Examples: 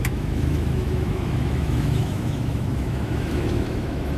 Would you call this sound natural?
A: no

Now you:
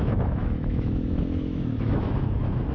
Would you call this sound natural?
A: no